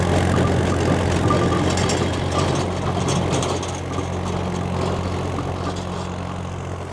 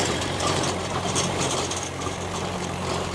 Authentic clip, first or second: first